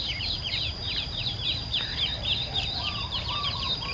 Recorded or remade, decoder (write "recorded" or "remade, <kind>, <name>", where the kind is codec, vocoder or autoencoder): remade, vocoder, BigVGAN v2